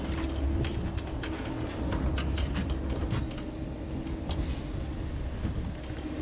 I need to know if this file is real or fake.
real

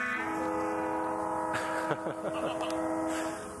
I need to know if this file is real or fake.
real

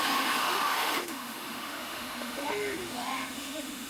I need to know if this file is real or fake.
fake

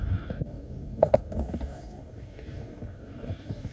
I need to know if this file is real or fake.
fake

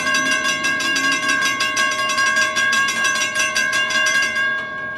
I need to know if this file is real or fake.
fake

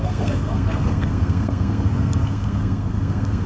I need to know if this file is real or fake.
fake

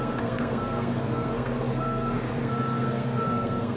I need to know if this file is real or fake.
fake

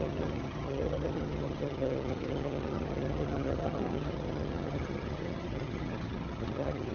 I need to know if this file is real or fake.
fake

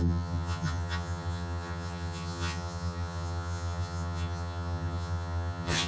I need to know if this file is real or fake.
fake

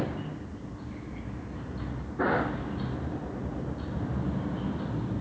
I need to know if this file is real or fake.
real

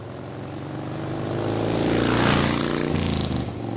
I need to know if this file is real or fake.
real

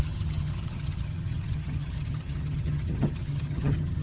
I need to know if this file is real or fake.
fake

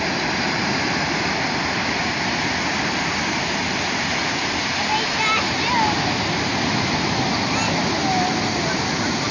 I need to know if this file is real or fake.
real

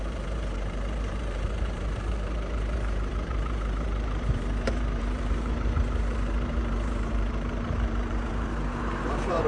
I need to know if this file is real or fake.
fake